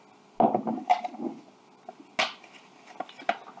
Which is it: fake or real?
real